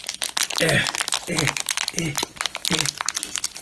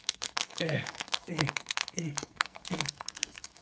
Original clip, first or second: first